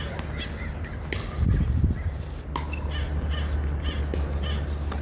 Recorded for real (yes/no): yes